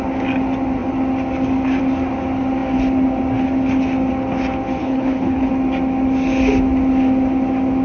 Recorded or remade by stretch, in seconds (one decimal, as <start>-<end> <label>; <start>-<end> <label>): 0.0-4.8 recorded; 4.8-5.5 remade; 5.5-7.8 recorded